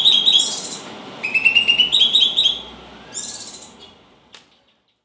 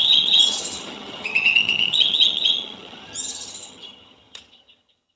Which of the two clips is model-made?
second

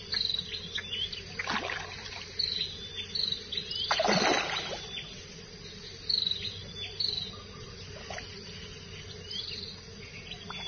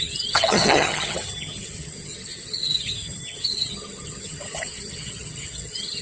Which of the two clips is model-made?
second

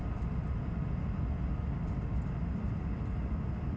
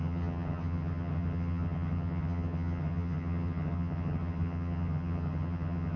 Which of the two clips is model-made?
second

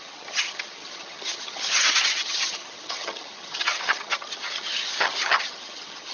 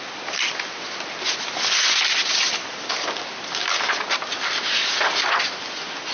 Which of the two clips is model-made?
first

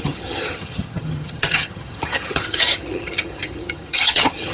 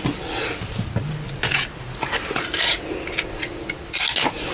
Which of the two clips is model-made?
first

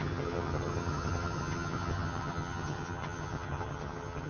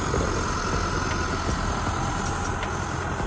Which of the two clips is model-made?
first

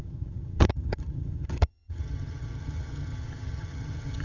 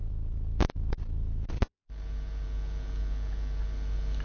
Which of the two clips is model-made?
first